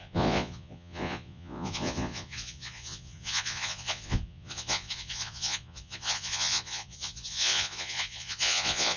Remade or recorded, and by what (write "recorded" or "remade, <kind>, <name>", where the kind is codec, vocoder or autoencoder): remade, vocoder, Vocos